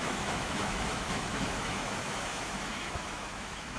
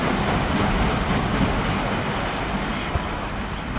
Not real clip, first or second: first